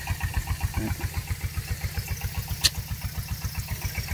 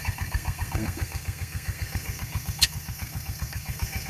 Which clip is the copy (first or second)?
second